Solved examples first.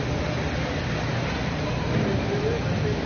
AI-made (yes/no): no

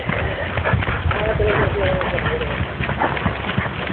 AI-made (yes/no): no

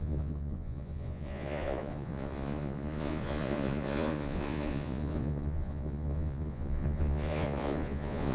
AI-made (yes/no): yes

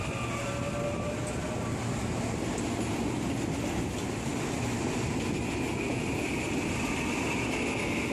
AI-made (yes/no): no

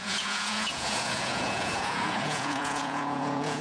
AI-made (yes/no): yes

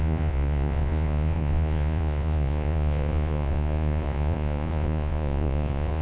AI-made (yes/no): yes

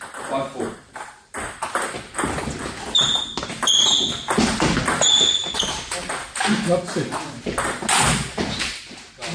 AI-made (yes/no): no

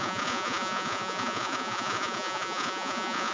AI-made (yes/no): yes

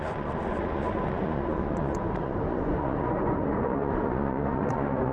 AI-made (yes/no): yes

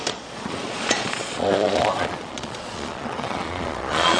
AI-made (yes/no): yes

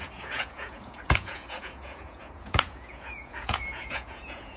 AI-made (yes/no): yes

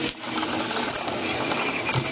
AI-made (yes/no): no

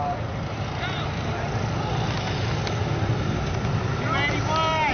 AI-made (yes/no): no